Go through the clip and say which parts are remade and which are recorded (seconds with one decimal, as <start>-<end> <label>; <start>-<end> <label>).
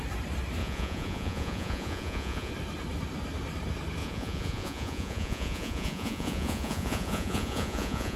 0.0-0.6 recorded; 0.6-2.5 remade; 2.5-4.0 recorded; 4.0-8.2 remade